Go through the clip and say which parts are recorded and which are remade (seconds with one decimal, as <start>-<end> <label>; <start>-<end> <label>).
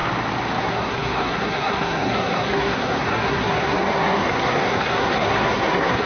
0.0-0.6 recorded; 0.6-6.1 remade